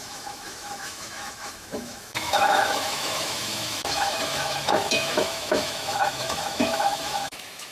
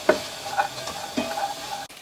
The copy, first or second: first